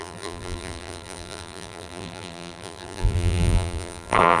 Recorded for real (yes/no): no